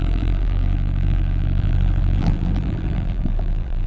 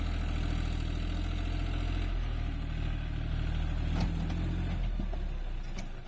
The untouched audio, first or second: second